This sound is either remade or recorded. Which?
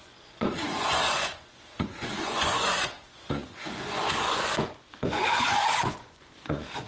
remade